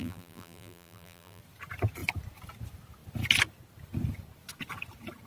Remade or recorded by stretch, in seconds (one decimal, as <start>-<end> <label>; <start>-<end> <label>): 0.0-1.4 remade; 1.4-5.3 recorded